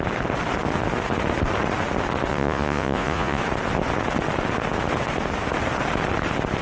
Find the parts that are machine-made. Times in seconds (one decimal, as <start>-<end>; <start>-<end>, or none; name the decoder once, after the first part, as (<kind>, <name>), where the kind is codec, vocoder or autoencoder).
2.3-3.4 (vocoder, Vocos)